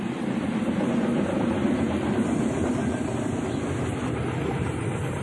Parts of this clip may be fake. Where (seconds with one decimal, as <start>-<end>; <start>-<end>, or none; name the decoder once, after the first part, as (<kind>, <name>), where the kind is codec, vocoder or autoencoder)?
0.0-2.8 (vocoder, BigVGAN v2); 4.0-5.2